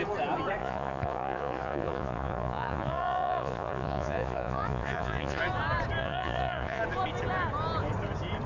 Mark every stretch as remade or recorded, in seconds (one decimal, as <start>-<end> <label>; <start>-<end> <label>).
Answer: 0.0-0.6 recorded; 0.6-5.4 remade; 5.4-6.0 recorded; 6.0-6.8 remade; 6.8-8.5 recorded